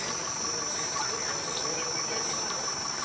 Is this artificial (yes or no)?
no